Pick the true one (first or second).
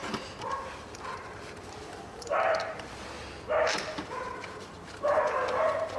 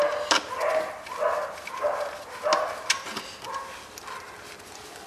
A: second